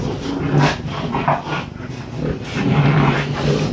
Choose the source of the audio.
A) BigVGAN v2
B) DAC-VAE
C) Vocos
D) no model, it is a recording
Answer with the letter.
D